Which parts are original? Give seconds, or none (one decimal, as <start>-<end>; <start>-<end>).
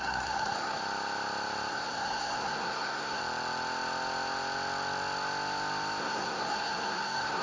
0.8-1.7; 3.2-6.0